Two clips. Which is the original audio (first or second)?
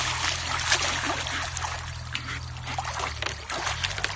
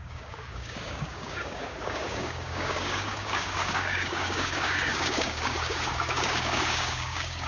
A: first